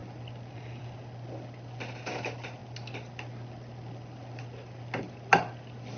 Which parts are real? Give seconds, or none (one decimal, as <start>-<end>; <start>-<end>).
0.0-6.0